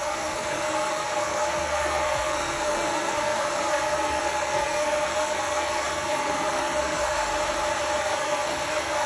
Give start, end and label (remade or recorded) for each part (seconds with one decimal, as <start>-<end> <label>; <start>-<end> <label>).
0.0-7.3 remade; 7.3-8.0 recorded; 8.0-9.1 remade